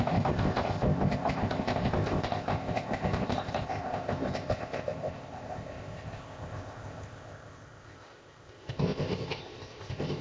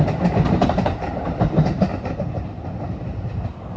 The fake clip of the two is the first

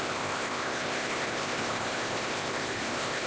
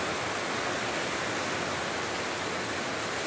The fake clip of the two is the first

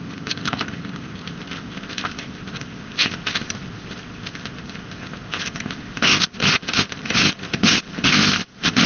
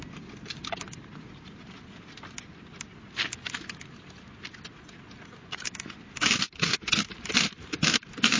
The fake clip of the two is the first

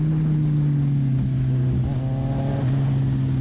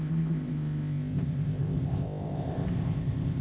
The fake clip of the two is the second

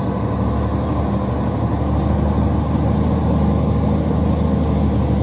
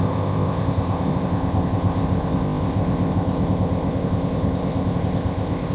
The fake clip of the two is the second